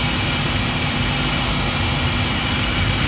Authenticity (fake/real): real